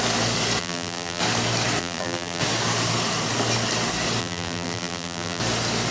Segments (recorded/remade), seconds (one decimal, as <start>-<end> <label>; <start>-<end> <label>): 0.0-0.6 recorded; 0.6-1.2 remade; 1.2-1.8 recorded; 1.8-2.4 remade; 2.4-4.2 recorded; 4.2-5.4 remade; 5.4-5.9 recorded